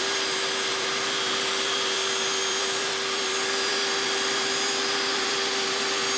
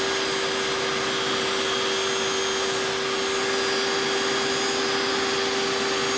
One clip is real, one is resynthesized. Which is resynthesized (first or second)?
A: first